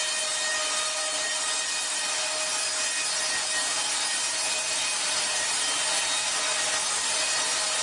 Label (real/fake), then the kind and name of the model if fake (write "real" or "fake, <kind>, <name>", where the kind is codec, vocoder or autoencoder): real